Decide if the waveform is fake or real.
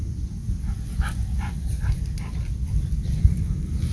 real